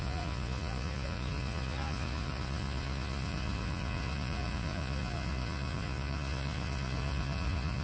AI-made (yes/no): yes